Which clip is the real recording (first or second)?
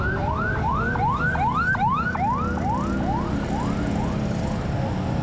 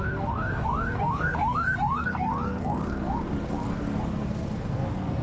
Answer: first